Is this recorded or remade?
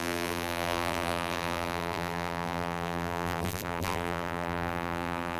remade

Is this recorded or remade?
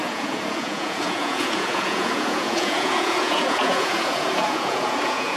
remade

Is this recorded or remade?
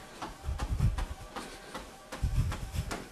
recorded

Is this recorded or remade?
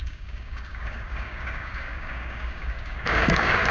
remade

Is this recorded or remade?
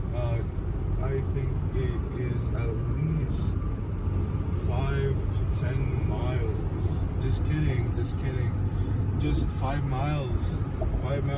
recorded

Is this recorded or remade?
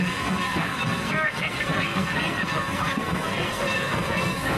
remade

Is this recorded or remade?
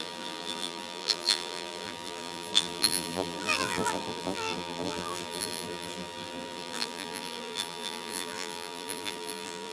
remade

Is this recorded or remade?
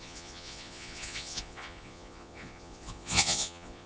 remade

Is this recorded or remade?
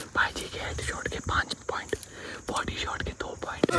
recorded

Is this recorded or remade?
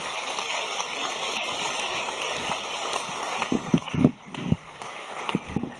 remade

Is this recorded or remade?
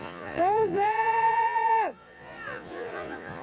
remade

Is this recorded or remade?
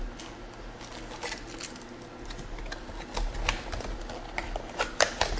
recorded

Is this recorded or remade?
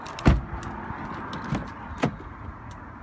recorded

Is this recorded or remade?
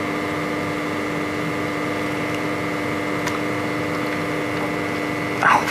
recorded